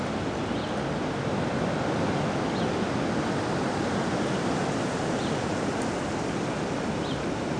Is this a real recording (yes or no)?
yes